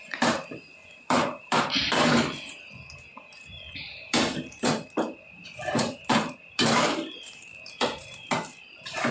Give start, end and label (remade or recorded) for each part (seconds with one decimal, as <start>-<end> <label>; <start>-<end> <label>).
0.0-9.1 remade

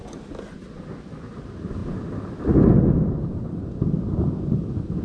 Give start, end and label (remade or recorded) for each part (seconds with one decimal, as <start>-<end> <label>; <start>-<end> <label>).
0.0-5.0 recorded

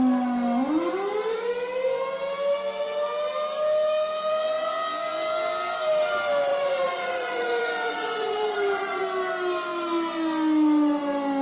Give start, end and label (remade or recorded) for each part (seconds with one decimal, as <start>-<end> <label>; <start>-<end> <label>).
0.0-6.5 recorded; 6.5-9.0 remade; 9.0-11.4 recorded

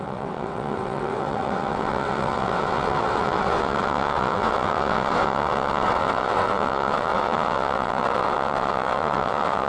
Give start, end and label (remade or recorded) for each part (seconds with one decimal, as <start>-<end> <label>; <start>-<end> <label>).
0.0-9.7 remade

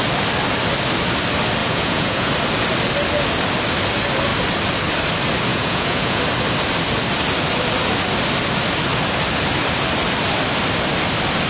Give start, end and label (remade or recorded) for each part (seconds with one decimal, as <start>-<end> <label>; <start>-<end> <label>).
0.0-1.6 recorded; 1.6-2.3 remade; 2.3-5.5 recorded; 5.5-6.2 remade; 6.2-11.5 recorded

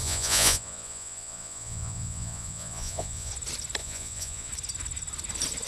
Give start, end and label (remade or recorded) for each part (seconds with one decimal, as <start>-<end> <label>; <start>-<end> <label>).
0.0-3.3 remade; 3.3-3.8 recorded; 3.8-4.5 remade; 4.5-5.7 recorded

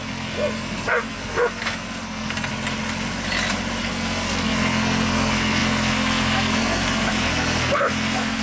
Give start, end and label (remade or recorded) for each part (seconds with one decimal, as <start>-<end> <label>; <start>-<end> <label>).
0.0-2.5 remade; 2.5-3.9 recorded; 3.9-8.4 remade